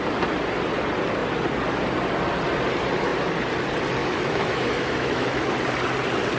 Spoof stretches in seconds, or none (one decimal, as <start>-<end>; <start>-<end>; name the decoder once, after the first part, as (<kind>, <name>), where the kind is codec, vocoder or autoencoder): 4.0-5.5 (autoencoder, DAC-VAE)